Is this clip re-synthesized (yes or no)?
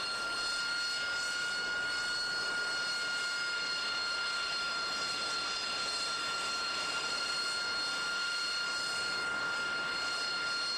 no